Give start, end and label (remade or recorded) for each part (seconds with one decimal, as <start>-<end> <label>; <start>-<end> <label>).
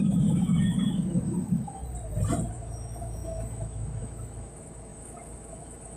0.0-1.8 remade; 1.8-2.5 recorded; 2.5-6.0 remade